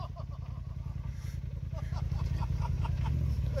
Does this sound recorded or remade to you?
recorded